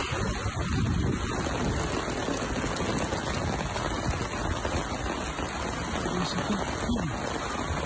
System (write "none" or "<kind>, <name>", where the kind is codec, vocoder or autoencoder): none